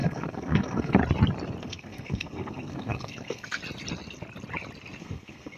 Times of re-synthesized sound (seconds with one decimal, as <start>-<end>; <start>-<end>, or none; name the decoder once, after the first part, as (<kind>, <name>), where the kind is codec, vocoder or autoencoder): 0.0-1.0 (codec, SNAC); 1.6-3.6; 5.0-5.6